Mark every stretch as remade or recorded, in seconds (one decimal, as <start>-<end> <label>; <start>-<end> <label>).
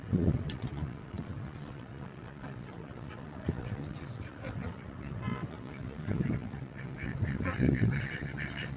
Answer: 0.0-8.8 remade